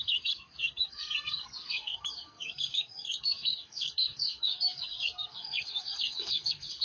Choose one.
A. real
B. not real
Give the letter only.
B